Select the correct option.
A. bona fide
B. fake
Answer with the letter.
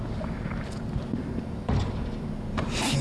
B